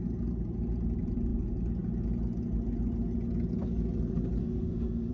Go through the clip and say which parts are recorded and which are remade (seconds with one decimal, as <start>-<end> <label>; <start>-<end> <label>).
0.0-4.4 recorded; 4.4-5.1 remade